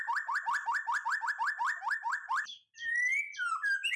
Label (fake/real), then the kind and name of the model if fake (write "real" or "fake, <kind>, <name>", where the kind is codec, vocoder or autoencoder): real